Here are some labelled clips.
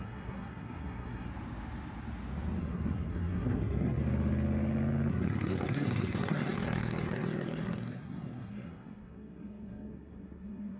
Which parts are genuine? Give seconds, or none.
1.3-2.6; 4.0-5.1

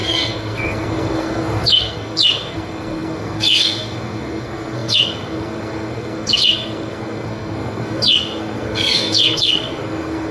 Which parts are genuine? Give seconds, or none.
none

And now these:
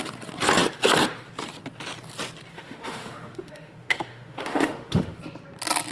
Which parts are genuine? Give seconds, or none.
0.0-2.5; 5.2-5.9

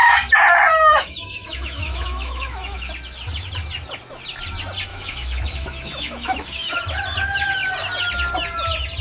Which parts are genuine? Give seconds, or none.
0.0-0.7; 2.9-4.9; 6.8-9.0